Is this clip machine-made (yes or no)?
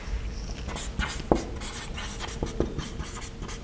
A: no